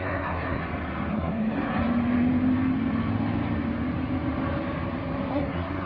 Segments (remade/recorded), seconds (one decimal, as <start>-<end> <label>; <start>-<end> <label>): 0.0-0.6 remade; 0.6-1.1 recorded; 1.1-1.8 remade; 1.8-5.3 recorded; 5.3-5.9 remade